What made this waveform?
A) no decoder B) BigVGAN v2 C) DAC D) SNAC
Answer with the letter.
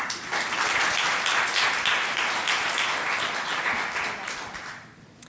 A